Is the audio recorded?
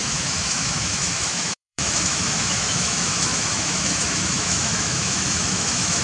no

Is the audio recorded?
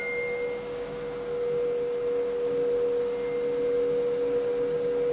yes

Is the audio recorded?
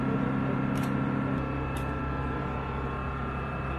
yes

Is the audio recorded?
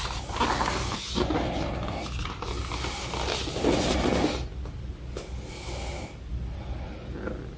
yes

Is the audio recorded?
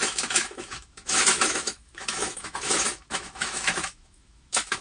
no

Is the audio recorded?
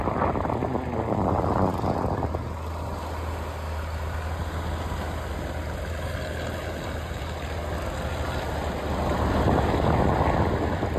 yes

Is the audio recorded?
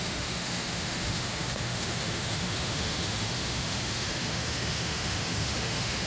no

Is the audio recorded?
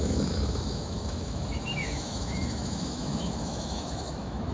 no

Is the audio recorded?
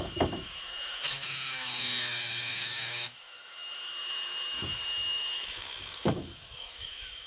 no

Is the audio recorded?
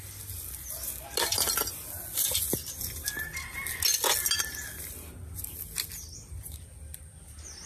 yes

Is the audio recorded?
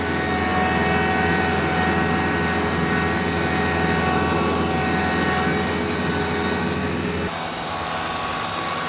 yes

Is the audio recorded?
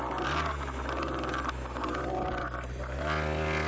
yes